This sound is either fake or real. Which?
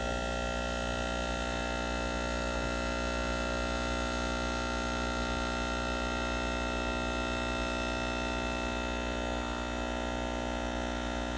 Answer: real